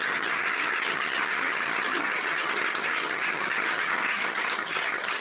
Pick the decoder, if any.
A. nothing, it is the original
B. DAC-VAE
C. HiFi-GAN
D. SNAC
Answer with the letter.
C